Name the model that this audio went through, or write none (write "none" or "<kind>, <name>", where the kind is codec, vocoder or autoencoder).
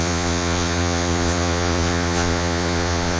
vocoder, Vocos